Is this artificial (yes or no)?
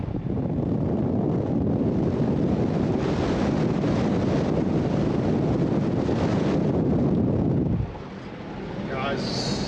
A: no